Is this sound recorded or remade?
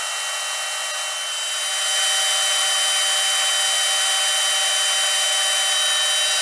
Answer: recorded